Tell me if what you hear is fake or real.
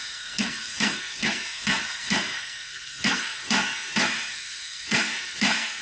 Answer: fake